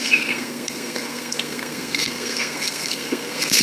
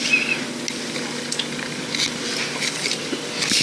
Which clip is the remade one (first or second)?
first